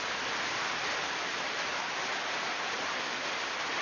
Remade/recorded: remade